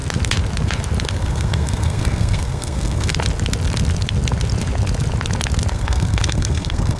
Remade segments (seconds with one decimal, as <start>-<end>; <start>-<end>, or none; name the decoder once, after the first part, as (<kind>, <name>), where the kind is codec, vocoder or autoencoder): 1.1-3.1 (codec, SNAC); 5.7-7.0